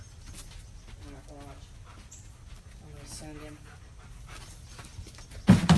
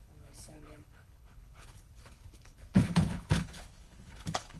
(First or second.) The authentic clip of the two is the first